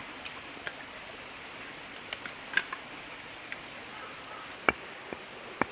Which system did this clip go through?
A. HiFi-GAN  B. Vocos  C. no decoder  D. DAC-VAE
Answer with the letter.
C